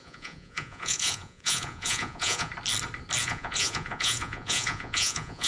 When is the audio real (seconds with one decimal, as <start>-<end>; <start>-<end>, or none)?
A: 2.5-3.2